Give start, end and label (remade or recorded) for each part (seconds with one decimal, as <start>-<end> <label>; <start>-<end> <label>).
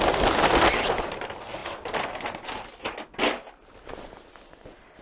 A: 0.0-5.0 recorded